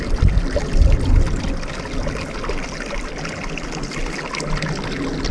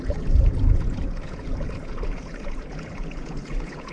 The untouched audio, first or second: first